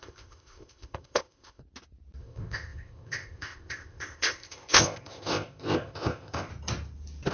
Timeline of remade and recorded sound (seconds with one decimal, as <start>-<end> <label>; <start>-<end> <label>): 0.0-1.6 remade; 1.6-2.2 recorded; 2.2-6.5 remade; 6.5-7.3 recorded

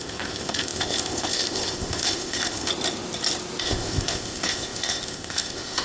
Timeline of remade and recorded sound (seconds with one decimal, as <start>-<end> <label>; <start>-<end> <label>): 0.0-2.7 remade; 2.7-3.6 recorded; 3.6-5.8 remade

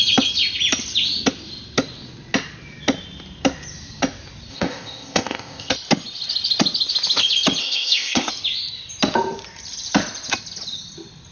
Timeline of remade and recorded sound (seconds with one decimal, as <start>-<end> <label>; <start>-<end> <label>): 0.0-4.5 recorded; 4.5-5.7 remade; 5.7-7.6 recorded; 7.6-8.3 remade; 8.3-11.3 recorded

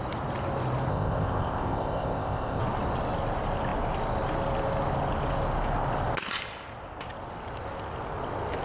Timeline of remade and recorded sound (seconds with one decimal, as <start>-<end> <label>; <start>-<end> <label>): 0.0-0.9 recorded; 0.9-2.6 remade; 2.6-8.6 recorded

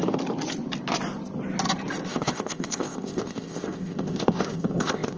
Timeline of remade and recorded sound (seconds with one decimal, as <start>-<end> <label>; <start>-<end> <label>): 0.0-2.1 recorded; 2.1-5.2 remade

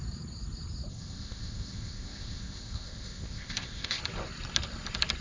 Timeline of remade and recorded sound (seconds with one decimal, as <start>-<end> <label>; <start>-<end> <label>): 0.0-0.9 recorded; 0.9-4.0 remade; 4.0-5.2 recorded

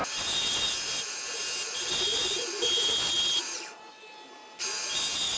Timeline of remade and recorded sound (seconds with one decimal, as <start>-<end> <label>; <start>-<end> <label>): 0.0-5.4 recorded